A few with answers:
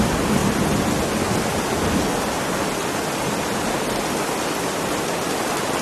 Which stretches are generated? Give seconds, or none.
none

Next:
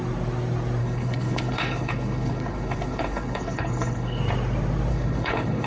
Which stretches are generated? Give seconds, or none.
0.8-4.2 (codec, HILCodec); 4.9-5.7